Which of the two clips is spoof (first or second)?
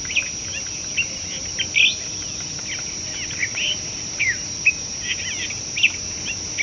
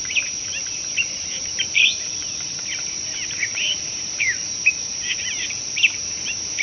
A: second